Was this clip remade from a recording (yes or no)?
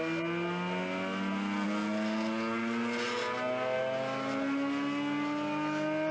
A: no